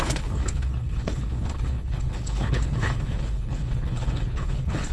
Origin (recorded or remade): remade